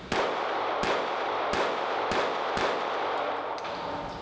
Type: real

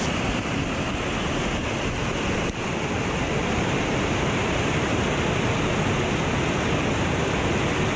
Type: real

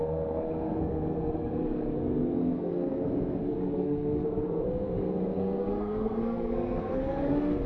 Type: fake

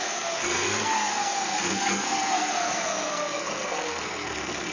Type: fake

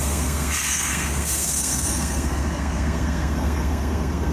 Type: fake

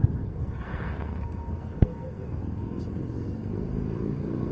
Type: fake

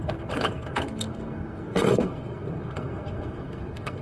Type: fake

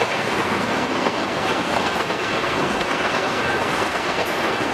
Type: fake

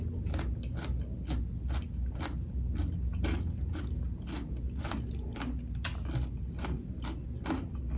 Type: real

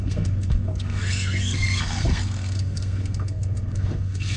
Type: fake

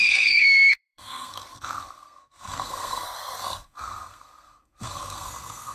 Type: fake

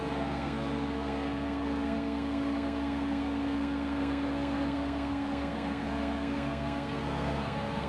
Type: fake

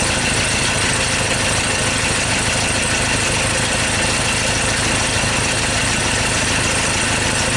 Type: real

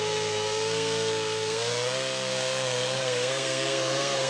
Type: fake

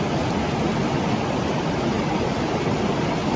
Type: real